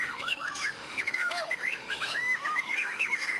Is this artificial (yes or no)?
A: yes